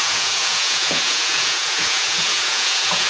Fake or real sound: fake